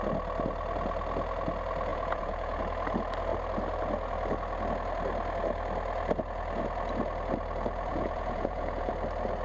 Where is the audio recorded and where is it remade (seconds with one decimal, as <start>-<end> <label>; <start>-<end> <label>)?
0.0-1.9 recorded; 1.9-2.6 remade; 2.6-7.9 recorded; 7.9-8.9 remade; 8.9-9.4 recorded

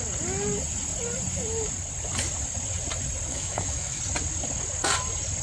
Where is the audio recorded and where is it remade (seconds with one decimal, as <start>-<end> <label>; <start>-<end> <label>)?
0.0-3.3 recorded; 3.3-4.0 remade; 4.0-5.4 recorded

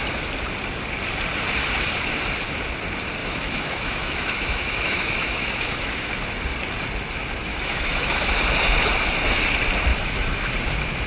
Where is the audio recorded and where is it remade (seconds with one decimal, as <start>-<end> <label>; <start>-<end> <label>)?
0.0-3.2 recorded; 3.2-6.1 remade; 6.1-7.5 recorded; 7.5-8.3 remade; 8.3-9.9 recorded; 9.9-10.5 remade; 10.5-11.1 recorded

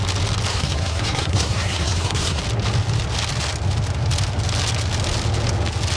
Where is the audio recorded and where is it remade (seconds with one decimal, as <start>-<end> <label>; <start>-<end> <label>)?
0.0-0.5 recorded; 0.5-2.4 remade; 2.4-6.0 recorded

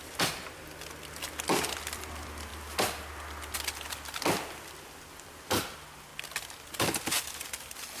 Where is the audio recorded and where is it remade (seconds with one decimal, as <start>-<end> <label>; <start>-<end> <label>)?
0.0-8.0 recorded

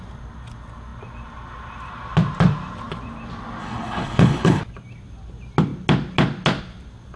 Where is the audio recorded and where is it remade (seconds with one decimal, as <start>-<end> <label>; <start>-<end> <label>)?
0.0-3.6 recorded; 3.6-4.6 remade; 4.6-7.2 recorded